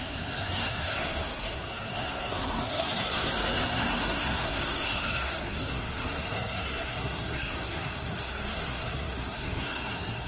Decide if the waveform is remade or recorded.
remade